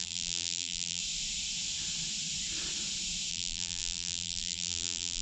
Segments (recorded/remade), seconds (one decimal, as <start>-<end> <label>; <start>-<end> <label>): 0.0-1.0 remade; 1.0-3.3 recorded; 3.3-5.2 remade